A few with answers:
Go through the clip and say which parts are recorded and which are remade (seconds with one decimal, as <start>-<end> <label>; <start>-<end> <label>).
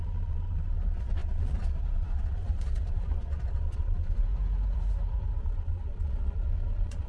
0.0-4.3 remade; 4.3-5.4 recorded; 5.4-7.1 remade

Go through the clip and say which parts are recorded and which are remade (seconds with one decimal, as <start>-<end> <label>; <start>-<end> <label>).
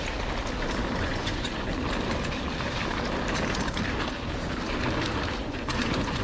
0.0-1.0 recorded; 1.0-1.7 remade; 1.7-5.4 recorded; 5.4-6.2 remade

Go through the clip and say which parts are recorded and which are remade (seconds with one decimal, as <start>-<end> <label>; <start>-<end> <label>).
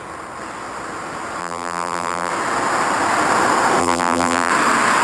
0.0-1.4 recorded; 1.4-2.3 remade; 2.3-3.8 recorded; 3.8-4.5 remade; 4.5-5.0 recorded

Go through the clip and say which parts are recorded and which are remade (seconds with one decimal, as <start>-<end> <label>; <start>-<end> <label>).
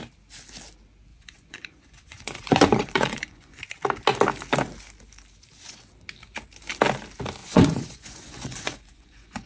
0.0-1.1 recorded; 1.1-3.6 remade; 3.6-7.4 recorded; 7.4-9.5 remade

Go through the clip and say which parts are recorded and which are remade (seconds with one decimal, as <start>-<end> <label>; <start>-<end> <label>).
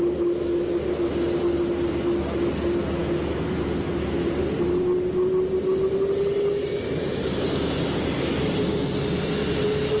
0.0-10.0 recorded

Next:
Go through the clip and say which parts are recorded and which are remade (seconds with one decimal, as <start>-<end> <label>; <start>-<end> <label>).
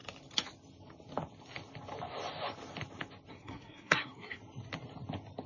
0.0-3.3 recorded; 3.3-4.4 remade; 4.4-5.5 recorded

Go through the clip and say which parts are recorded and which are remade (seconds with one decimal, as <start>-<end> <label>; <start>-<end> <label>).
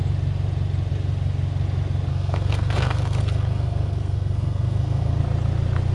0.0-2.1 recorded; 2.1-5.2 remade; 5.2-5.9 recorded